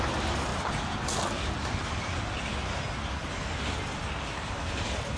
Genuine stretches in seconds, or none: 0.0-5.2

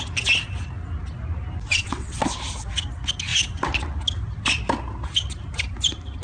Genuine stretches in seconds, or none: 0.0-1.7; 2.2-6.2

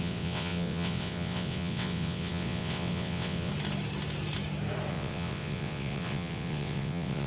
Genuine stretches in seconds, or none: 3.5-4.9